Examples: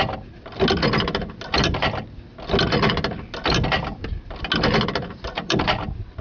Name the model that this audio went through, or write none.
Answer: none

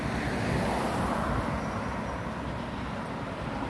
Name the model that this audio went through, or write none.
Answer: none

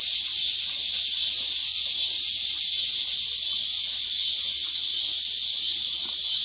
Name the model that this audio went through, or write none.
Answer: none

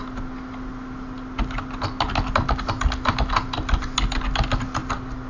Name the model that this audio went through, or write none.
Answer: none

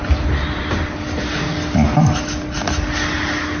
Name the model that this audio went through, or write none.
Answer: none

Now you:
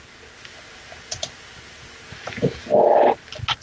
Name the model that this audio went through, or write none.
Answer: none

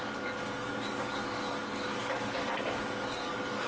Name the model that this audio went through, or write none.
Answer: codec, DAC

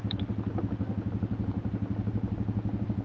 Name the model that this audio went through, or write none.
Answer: none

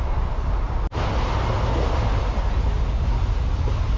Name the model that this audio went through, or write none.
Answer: none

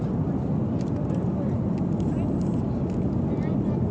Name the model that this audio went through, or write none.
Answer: none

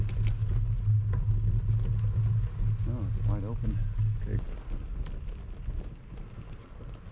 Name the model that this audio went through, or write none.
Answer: none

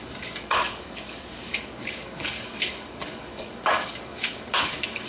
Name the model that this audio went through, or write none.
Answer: codec, DAC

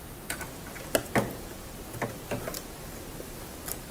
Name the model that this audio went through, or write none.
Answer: none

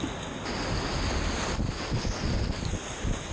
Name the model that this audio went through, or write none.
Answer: none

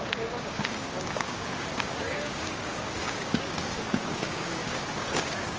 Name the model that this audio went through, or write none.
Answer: codec, DAC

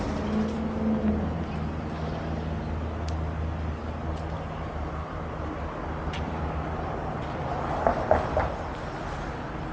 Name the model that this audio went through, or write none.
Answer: none